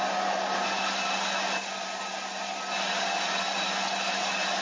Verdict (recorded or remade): recorded